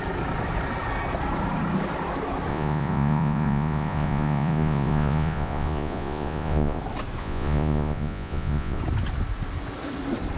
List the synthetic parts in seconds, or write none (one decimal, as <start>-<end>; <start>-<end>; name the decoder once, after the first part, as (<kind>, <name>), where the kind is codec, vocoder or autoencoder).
2.5-6.8 (vocoder, Vocos); 7.2-8.8